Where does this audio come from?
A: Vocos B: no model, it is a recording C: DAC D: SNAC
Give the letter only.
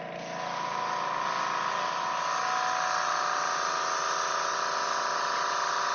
B